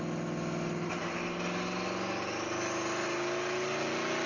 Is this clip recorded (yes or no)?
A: yes